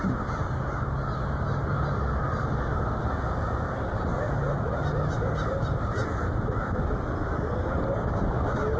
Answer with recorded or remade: recorded